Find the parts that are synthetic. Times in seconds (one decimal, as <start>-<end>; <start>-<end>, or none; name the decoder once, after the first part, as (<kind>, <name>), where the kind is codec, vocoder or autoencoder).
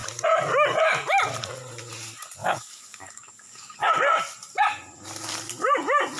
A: 2.4-3.9 (codec, DAC)